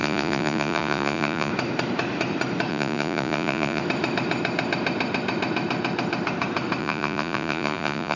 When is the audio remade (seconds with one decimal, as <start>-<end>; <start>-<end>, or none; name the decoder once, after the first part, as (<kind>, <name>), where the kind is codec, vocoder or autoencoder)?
0.0-1.5 (vocoder, Vocos); 2.7-3.8; 6.8-8.2